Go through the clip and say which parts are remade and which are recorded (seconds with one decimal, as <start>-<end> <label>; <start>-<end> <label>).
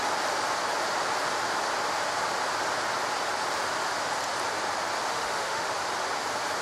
0.0-5.1 recorded; 5.1-5.7 remade; 5.7-6.6 recorded